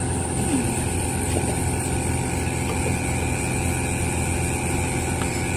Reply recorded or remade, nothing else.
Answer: recorded